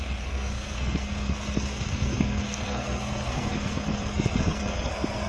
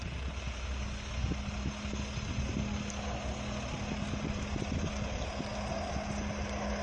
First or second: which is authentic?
second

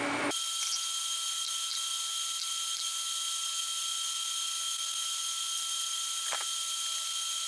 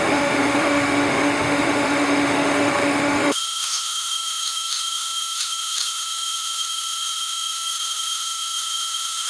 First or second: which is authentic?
first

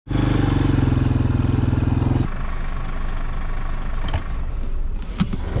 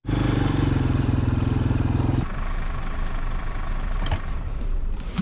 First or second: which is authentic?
first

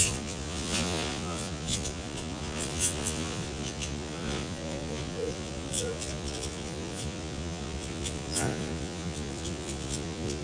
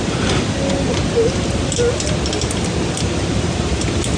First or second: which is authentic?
second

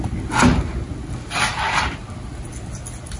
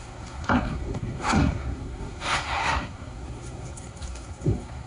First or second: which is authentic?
first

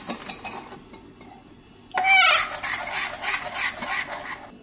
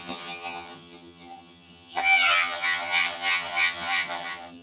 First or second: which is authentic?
first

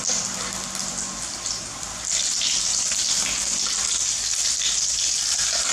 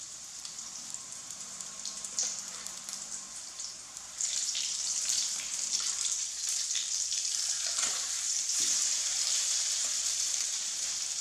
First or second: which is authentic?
first